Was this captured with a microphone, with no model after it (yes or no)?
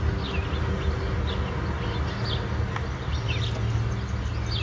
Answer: yes